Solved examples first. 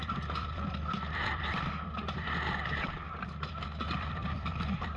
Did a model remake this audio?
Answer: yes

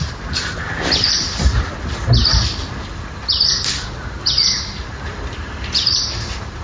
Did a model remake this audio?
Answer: no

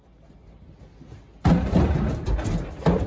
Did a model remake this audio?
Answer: no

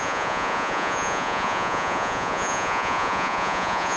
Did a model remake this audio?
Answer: yes